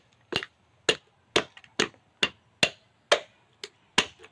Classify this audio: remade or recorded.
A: recorded